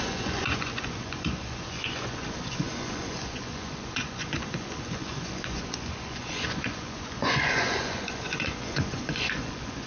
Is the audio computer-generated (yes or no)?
yes